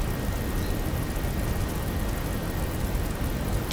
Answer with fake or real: real